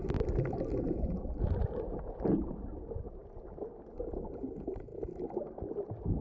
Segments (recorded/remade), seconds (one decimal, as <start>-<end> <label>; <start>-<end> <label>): 0.0-3.2 remade; 3.2-4.0 recorded; 4.0-4.9 remade; 4.9-5.4 recorded; 5.4-6.2 remade